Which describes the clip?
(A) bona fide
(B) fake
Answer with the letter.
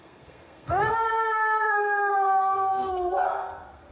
B